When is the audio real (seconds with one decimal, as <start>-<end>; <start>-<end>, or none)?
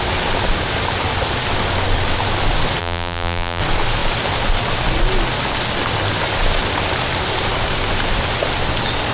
0.0-2.8; 3.6-9.1